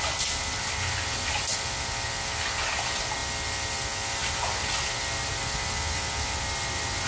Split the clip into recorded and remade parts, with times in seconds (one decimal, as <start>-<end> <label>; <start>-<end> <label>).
0.0-7.1 recorded